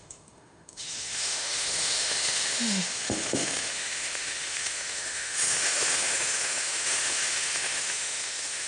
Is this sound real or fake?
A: fake